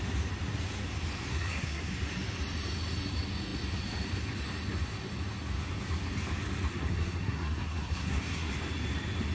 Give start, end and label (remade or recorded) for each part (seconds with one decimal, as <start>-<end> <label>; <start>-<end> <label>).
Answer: 0.0-1.3 recorded; 1.3-1.9 remade; 1.9-6.7 recorded; 6.7-8.5 remade; 8.5-9.3 recorded